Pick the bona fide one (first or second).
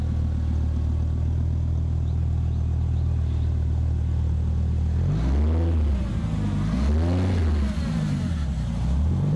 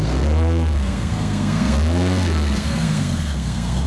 first